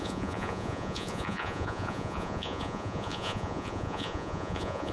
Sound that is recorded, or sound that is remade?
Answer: remade